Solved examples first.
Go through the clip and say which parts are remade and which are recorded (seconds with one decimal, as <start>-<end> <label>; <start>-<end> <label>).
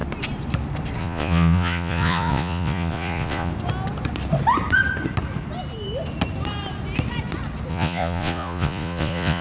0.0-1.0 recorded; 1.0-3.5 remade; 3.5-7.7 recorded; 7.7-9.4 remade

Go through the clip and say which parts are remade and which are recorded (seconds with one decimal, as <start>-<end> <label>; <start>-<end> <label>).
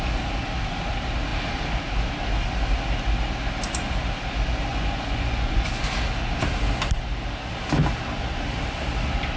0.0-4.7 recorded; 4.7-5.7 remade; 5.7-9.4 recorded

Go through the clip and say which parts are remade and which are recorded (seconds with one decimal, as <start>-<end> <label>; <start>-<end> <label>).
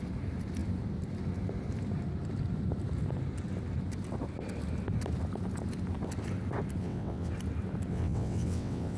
0.0-6.8 recorded; 6.8-7.3 remade; 7.3-7.9 recorded; 7.9-9.0 remade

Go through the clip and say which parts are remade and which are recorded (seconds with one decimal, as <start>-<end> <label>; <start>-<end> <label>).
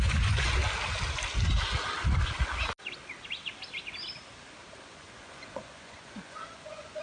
0.0-0.6 remade; 0.6-4.8 recorded; 4.8-7.0 remade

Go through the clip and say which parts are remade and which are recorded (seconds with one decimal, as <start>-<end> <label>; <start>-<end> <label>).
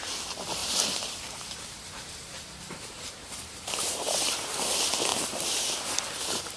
0.0-0.6 recorded; 0.6-4.6 remade; 4.6-5.1 recorded; 5.1-5.7 remade; 5.7-6.6 recorded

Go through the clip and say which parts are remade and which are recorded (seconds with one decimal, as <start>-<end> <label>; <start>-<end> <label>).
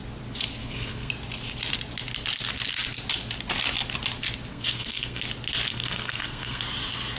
0.0-0.6 recorded; 0.6-1.1 remade; 1.1-4.5 recorded; 4.5-5.2 remade; 5.2-5.7 recorded; 5.7-6.6 remade; 6.6-7.2 recorded